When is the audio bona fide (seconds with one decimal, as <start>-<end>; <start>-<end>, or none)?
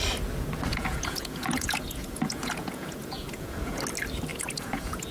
0.0-0.7; 3.8-4.3